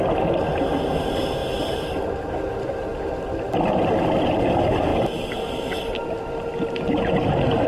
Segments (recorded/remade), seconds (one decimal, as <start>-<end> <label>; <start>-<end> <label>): 0.0-7.7 recorded